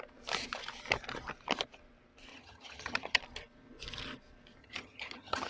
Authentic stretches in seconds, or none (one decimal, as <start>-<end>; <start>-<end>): 0.0-2.3; 3.2-4.6